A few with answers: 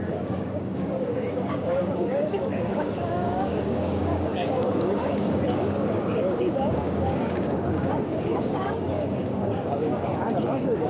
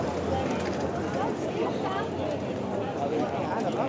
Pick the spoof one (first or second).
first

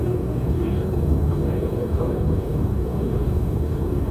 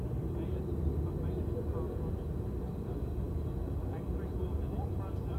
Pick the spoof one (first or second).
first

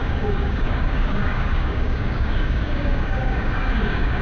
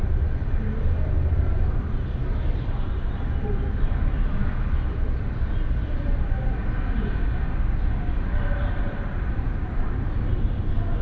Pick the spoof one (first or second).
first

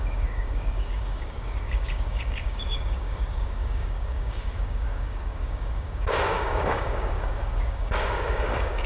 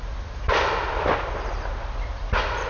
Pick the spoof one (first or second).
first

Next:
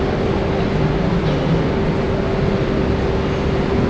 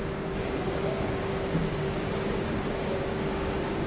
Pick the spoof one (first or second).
second